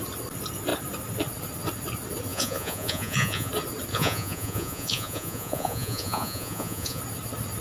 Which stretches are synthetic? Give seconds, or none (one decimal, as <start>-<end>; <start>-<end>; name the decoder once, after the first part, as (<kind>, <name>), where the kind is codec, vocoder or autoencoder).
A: 2.3-3.5 (vocoder, Vocos); 3.9-7.0